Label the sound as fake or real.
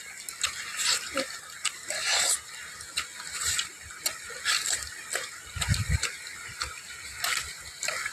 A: real